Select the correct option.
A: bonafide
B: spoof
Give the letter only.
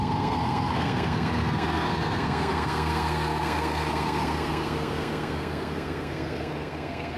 B